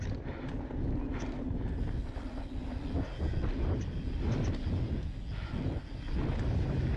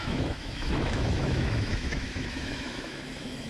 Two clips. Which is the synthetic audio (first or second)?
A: second